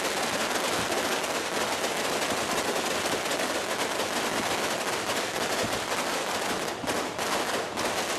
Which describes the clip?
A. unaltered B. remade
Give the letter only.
A